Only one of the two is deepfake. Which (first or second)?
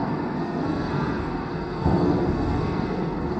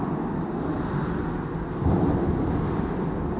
first